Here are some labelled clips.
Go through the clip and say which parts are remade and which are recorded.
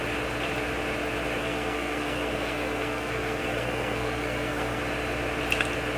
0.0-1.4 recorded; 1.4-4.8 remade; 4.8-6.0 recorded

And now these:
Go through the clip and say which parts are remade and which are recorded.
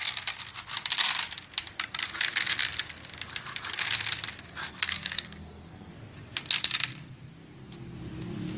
0.0-4.6 recorded; 4.6-5.9 remade; 5.9-8.6 recorded